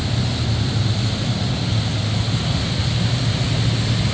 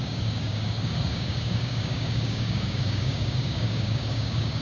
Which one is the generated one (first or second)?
second